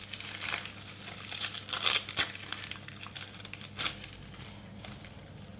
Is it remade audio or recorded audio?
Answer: recorded